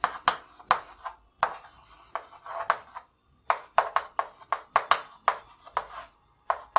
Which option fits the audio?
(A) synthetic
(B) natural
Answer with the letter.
B